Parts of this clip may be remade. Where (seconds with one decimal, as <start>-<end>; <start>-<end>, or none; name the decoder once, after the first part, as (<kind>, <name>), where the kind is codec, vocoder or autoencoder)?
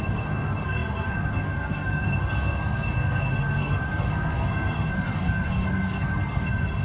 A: 0.0-6.8 (codec, SNAC)